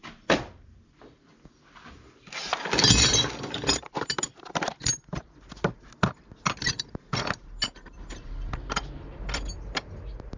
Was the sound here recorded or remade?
recorded